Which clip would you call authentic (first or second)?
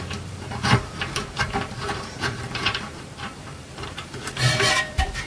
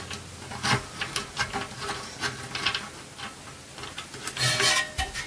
second